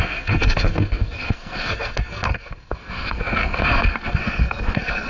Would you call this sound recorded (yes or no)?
no